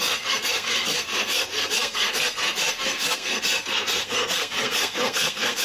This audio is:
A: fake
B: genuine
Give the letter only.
A